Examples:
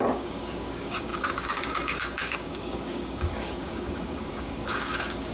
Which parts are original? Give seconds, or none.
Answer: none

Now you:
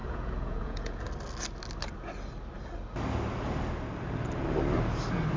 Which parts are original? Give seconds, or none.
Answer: 1.0-5.4